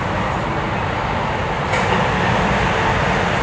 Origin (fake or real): real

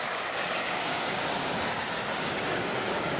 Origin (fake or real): fake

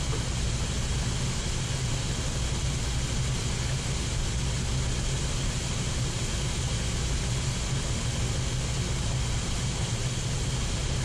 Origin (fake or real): real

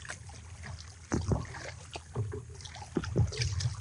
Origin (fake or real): real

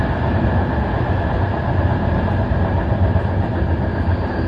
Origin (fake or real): real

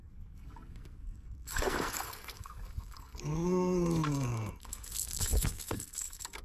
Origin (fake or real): fake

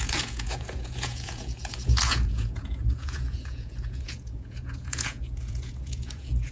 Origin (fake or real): fake